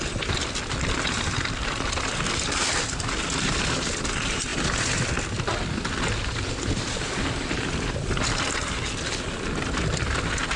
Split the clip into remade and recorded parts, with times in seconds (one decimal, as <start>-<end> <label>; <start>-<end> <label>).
0.0-10.6 recorded